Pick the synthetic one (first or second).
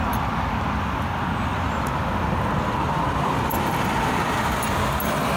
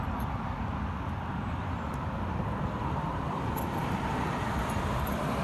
second